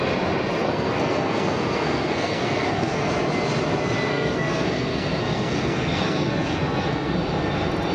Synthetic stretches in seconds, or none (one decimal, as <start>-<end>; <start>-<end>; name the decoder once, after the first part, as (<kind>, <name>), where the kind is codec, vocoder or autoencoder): 0.6-3.1 (codec, SNAC); 4.1-7.1